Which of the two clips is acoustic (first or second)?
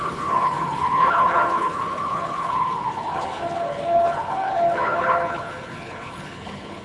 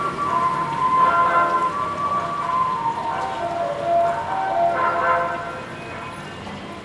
second